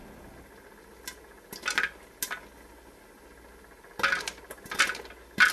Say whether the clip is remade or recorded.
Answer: recorded